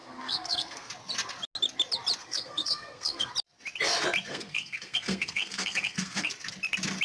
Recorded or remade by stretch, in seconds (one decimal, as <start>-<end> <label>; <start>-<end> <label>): 0.0-0.9 remade; 0.9-2.2 recorded; 2.2-3.3 remade; 3.3-4.3 recorded; 4.3-6.3 remade; 6.3-7.0 recorded